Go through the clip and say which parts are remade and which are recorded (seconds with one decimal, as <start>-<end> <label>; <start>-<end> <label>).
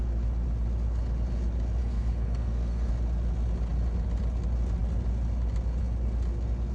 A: 0.0-1.8 recorded; 1.8-2.9 remade; 2.9-6.7 recorded